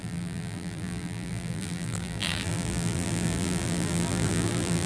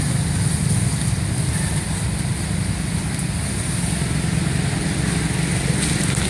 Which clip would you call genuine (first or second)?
second